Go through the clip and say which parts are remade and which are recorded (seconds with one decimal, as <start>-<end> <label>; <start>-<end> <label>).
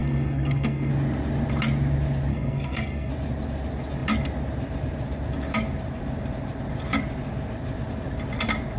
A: 0.0-0.9 remade; 0.9-2.3 recorded; 2.3-3.1 remade; 3.1-8.8 recorded